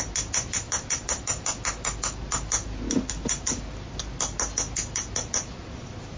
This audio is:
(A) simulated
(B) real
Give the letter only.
B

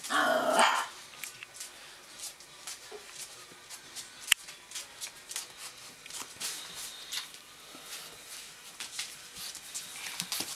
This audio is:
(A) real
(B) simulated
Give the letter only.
A